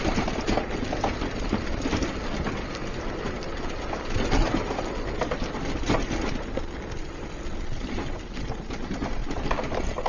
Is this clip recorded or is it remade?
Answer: recorded